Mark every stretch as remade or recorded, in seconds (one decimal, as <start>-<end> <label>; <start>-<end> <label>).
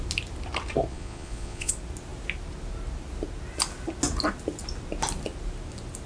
0.0-0.9 recorded; 0.9-1.7 remade; 1.7-6.1 recorded